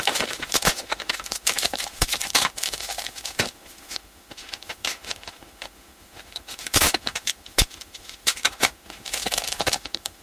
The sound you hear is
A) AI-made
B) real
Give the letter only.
A